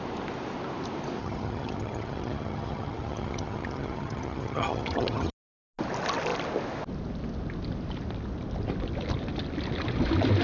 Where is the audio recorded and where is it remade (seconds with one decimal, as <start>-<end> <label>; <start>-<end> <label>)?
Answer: 0.0-1.2 recorded; 1.2-5.3 remade; 5.3-10.4 recorded

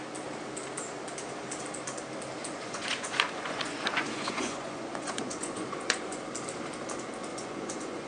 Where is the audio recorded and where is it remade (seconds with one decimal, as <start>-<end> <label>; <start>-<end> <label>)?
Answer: 0.0-2.4 recorded; 2.4-6.2 remade; 6.2-7.3 recorded; 7.3-8.1 remade

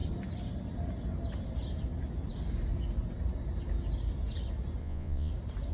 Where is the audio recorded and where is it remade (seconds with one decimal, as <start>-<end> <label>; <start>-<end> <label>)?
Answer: 0.0-4.8 recorded; 4.8-5.3 remade; 5.3-5.7 recorded

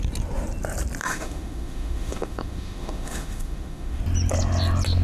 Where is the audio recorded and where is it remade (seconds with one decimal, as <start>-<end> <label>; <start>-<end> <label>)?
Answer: 0.0-1.0 recorded; 1.0-4.0 remade; 4.0-5.0 recorded